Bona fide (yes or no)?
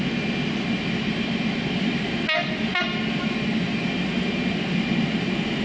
yes